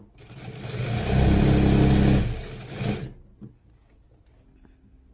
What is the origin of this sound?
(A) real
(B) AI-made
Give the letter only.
A